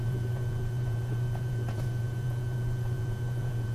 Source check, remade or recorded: remade